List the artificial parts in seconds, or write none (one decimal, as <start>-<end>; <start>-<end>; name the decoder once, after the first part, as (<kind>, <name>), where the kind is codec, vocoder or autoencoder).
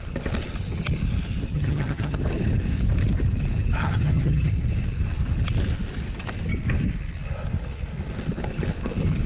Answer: 1.5-2.2 (vocoder, HiFi-GAN); 3.8-4.5